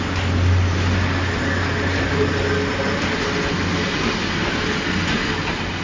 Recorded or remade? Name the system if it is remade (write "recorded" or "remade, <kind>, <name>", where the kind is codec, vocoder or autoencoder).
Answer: recorded